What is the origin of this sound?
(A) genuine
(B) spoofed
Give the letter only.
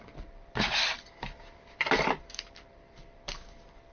B